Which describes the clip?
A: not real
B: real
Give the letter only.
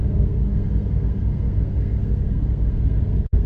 A